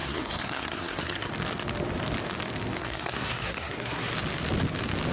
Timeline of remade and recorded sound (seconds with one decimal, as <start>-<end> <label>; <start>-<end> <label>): 0.0-1.3 remade; 1.3-2.8 recorded; 2.8-4.1 remade; 4.1-5.1 recorded